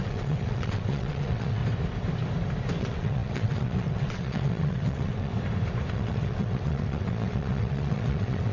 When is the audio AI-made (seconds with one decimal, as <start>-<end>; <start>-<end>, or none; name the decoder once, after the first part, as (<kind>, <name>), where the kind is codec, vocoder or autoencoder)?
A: 0.0-1.6 (vocoder, WaveNeXt); 2.8-5.3; 5.9-8.5